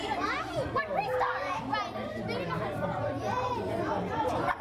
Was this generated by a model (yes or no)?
no